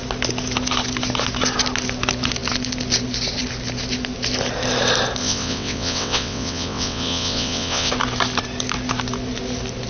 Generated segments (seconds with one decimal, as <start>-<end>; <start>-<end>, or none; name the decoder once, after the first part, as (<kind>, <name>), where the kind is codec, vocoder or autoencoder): 5.2-7.9 (vocoder, WaveNeXt)